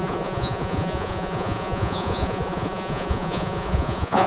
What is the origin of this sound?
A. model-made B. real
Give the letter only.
A